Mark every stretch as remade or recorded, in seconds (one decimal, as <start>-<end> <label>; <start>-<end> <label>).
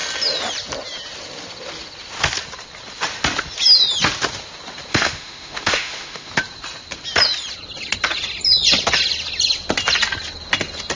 0.0-4.9 recorded; 4.9-6.3 remade; 6.3-11.0 recorded